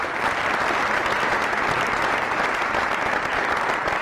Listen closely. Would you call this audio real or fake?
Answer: real